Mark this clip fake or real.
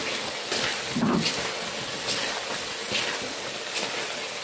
real